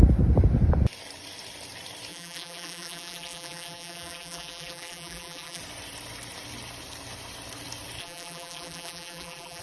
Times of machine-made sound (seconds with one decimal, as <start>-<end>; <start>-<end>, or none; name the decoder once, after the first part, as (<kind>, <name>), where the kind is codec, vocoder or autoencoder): 2.1-5.6 (vocoder, BigVGAN v2); 8.0-9.6